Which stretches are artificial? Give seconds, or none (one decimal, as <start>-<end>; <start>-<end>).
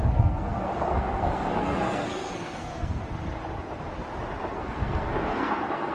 0.0-3.0; 4.5-5.9